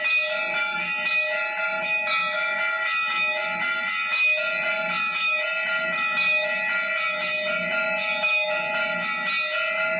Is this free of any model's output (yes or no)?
yes